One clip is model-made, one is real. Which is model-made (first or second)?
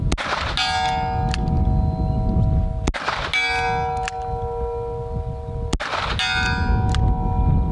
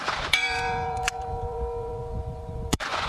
second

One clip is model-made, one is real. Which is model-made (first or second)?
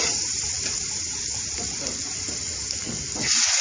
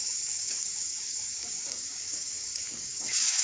second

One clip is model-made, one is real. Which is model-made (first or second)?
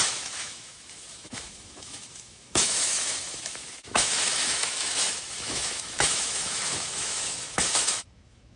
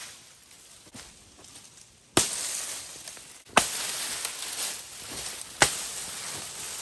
first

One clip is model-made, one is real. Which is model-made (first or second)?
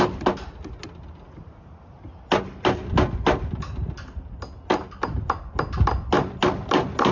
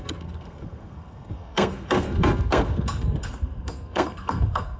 second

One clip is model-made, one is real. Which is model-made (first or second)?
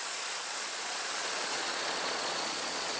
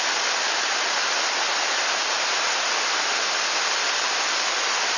first